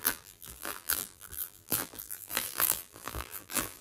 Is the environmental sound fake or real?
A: fake